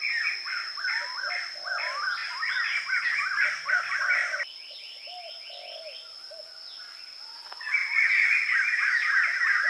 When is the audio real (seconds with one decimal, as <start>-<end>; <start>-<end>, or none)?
0.0-9.7